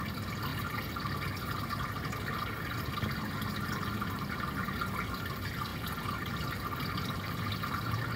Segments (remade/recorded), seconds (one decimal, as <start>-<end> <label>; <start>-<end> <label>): 0.0-8.2 recorded